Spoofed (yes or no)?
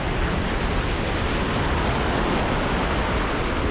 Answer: no